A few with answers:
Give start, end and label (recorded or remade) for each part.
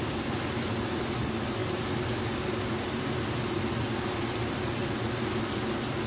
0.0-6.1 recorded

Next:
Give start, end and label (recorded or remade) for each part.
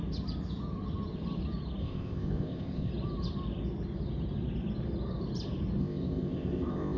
0.0-1.8 recorded; 1.8-2.9 remade; 2.9-5.8 recorded; 5.8-7.0 remade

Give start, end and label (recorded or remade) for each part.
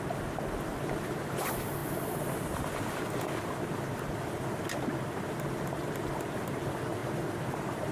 0.0-7.9 recorded